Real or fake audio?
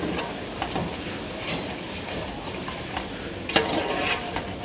real